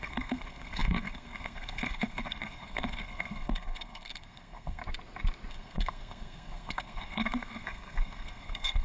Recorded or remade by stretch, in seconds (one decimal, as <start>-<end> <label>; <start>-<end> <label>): 0.0-4.8 remade; 4.8-5.5 recorded; 5.5-8.8 remade